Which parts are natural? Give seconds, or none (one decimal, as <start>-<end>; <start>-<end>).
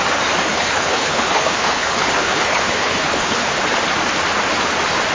0.0-0.5; 3.6-5.1